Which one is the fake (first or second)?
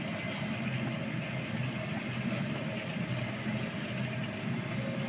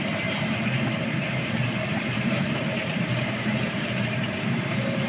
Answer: second